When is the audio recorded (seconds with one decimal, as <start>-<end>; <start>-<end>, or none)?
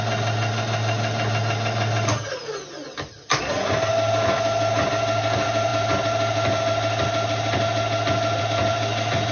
0.0-9.3